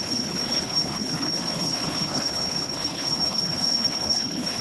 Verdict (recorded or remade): remade